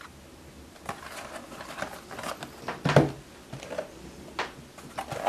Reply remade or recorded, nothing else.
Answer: recorded